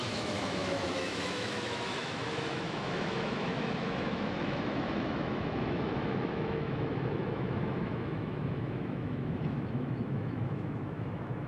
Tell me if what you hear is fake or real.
fake